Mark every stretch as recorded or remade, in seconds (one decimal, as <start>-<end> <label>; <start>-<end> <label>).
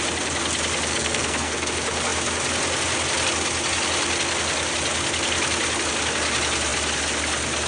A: 0.0-0.9 recorded; 0.9-1.7 remade; 1.7-7.7 recorded